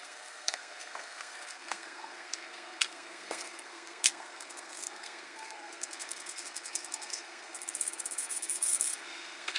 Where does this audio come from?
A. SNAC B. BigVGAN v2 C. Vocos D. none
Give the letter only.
A